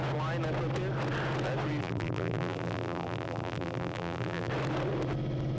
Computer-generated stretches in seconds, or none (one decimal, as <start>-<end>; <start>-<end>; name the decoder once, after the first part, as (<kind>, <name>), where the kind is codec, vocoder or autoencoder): 1.8-4.5 (vocoder, BigVGAN v2)